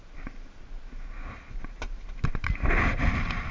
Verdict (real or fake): real